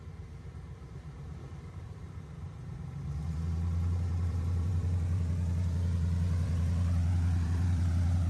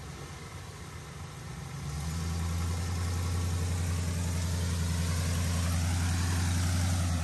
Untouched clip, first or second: second